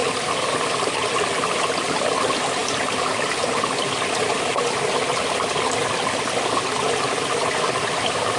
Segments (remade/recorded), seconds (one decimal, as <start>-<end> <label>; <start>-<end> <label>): 0.0-8.4 recorded